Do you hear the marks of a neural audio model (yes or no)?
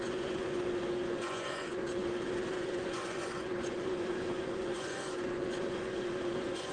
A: yes